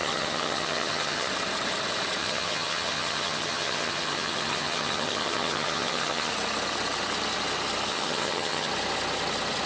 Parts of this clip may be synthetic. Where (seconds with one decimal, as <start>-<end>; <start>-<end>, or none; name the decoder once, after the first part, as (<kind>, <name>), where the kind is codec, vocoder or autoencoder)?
0.0-1.3 (vocoder, HiFi-GAN); 2.2-6.3; 7.9-8.7